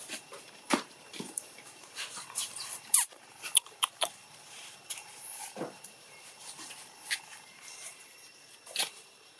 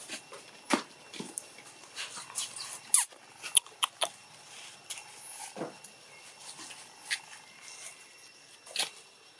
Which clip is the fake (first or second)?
first